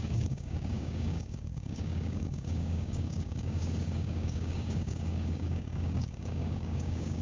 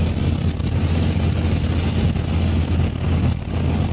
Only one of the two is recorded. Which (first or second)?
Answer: second